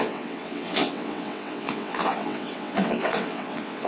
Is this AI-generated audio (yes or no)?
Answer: yes